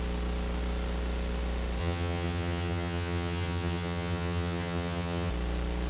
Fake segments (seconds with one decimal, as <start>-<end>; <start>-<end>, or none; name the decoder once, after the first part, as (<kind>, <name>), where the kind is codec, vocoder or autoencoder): 1.8-5.3 (vocoder, HiFi-GAN)